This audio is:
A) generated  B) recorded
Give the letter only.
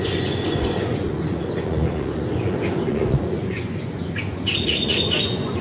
A